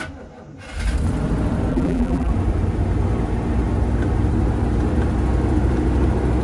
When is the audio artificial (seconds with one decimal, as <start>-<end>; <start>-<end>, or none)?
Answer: 1.7-2.3